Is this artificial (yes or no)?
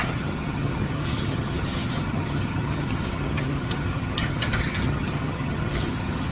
yes